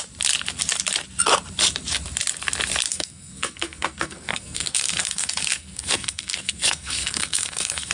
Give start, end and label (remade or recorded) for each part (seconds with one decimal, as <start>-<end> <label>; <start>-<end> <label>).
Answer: 0.0-2.9 recorded; 2.9-7.9 remade